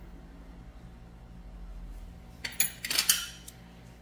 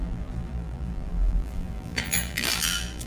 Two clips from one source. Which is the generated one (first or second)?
second